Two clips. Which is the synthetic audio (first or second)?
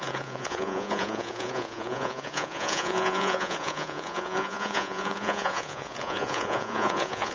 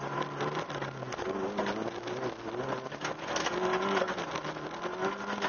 first